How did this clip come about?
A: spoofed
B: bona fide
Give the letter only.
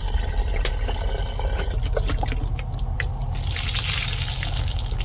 B